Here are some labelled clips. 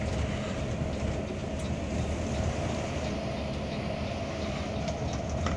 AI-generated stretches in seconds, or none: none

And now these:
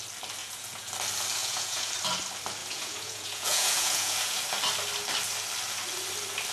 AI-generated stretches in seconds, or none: 0.4-0.9 (vocoder, Vocos); 1.4-1.9; 2.6-4.4

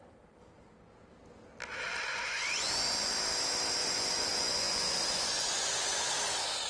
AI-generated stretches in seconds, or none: 2.1-3.1 (vocoder, Vocos); 3.8-6.1

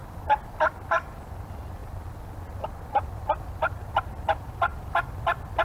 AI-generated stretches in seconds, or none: none

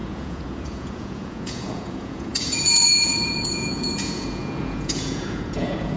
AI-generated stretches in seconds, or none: 0.0-6.0 (vocoder, Vocos)